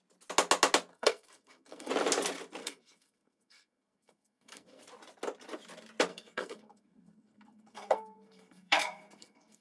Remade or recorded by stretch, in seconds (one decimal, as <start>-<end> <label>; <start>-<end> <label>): 0.0-0.9 recorded; 0.9-1.9 remade; 1.9-2.6 recorded; 2.6-4.8 remade; 4.8-6.1 recorded; 6.1-9.6 remade